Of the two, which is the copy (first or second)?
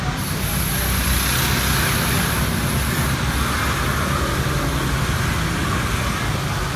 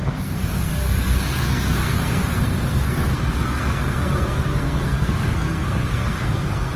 second